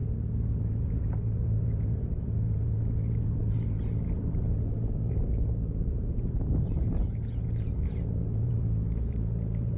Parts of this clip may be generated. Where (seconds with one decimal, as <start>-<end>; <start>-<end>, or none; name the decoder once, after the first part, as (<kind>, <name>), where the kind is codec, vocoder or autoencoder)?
0.6-9.8 (vocoder, BigVGAN v2)